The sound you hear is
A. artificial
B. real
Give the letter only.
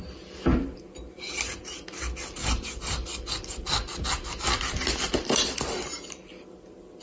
B